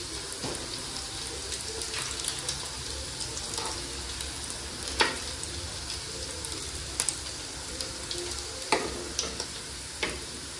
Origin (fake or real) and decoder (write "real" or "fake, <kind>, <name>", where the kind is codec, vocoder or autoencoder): real